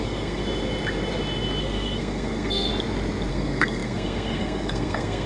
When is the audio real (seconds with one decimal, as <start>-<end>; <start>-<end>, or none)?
0.4-1.6; 2.7-3.3